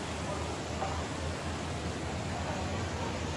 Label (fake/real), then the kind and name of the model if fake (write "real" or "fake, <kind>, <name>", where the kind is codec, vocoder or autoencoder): real